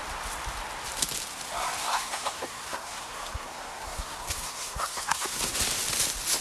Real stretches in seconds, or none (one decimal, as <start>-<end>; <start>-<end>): 0.0-1.8; 5.6-6.4

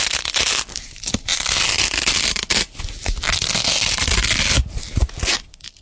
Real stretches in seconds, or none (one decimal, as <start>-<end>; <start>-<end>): 0.0-5.8

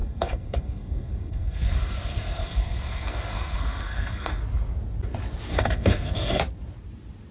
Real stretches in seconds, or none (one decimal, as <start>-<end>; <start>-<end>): 4.4-5.5; 6.4-7.3